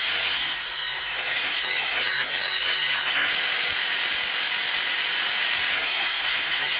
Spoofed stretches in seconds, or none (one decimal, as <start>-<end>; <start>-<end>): 0.0-3.3; 5.7-6.8